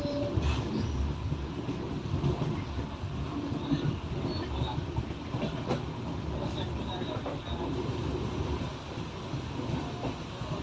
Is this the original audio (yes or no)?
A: yes